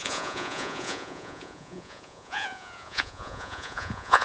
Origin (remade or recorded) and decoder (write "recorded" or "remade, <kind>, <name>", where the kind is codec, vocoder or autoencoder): remade, vocoder, Vocos